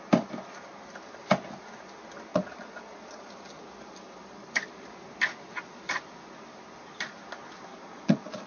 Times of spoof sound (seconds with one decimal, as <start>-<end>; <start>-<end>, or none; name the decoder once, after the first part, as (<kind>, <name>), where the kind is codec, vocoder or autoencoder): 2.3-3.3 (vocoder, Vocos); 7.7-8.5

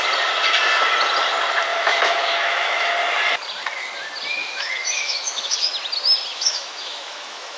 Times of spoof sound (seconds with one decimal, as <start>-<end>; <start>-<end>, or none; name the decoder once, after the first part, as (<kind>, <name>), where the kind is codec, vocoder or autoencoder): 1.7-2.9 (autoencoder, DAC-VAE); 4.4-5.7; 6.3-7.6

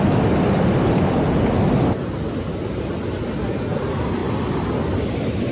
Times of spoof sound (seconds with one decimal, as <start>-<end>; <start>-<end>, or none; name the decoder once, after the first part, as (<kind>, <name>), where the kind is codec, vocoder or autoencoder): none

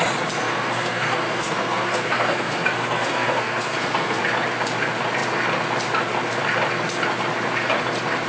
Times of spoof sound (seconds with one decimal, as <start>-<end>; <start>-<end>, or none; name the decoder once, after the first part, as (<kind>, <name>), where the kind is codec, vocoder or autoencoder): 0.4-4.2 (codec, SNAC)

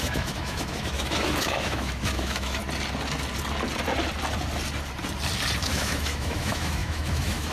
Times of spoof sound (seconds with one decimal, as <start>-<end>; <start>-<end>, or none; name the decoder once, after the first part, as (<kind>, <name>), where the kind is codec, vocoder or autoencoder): 0.0-2.6 (autoencoder, DAC-VAE); 5.6-7.5

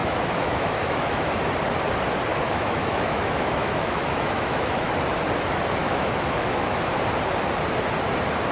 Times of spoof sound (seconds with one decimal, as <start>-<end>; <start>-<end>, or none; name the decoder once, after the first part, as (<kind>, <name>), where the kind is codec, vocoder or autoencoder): 0.0-1.4 (autoencoder, DAC-VAE); 2.3-4.9; 5.8-6.9

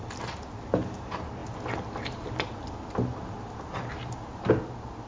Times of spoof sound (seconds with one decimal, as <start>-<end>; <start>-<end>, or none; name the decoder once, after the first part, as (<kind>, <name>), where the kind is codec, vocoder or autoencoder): none